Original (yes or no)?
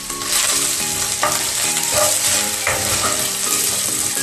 no